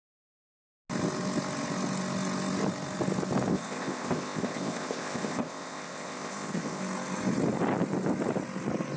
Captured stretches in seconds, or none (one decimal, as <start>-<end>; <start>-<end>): 0.0-3.5; 6.8-9.0